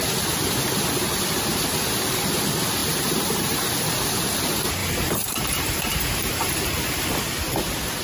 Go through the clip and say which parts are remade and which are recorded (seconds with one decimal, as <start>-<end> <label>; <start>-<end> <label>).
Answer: 0.0-2.8 recorded; 2.8-4.0 remade; 4.0-4.8 recorded; 4.8-7.1 remade; 7.1-8.0 recorded